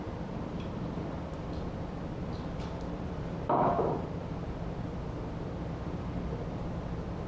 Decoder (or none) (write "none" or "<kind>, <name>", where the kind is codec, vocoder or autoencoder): vocoder, BigVGAN v2